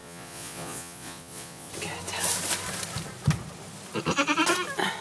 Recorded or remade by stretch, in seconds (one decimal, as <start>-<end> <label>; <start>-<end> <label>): 0.0-1.7 remade; 1.7-5.0 recorded

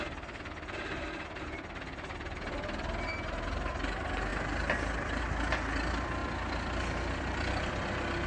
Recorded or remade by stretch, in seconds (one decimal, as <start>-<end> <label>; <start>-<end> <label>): 0.0-6.2 recorded; 6.2-7.7 remade; 7.7-8.3 recorded

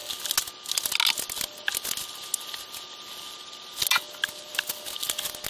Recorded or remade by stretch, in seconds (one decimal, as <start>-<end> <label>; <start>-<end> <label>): 0.0-5.5 recorded

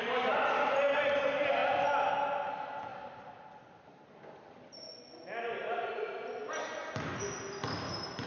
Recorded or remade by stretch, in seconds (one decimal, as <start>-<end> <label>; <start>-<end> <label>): 0.0-8.3 recorded

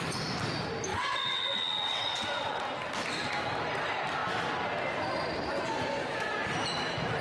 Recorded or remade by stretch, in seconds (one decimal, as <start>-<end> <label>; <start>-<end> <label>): 0.0-0.9 recorded; 0.9-2.6 remade; 2.6-7.2 recorded

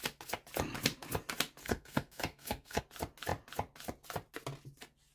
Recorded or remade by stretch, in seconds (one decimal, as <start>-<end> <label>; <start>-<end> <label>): 0.0-1.6 recorded; 1.6-2.8 remade; 2.8-5.1 recorded

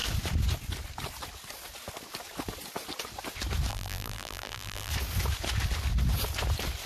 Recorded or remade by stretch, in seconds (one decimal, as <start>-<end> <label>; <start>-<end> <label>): 0.0-3.7 recorded; 3.7-4.9 remade; 4.9-6.9 recorded

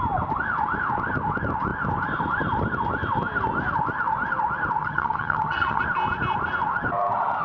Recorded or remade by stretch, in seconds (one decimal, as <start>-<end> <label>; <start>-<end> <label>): 0.0-4.8 recorded; 4.8-5.8 remade; 5.8-7.4 recorded